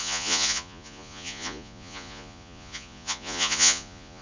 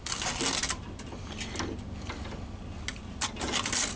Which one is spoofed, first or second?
first